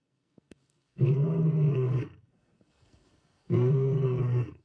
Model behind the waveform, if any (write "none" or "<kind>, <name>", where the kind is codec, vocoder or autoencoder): codec, SNAC